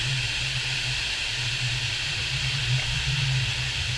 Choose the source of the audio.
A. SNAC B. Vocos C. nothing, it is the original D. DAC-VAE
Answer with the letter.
C